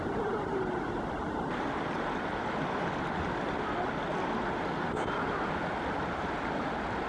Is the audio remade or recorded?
recorded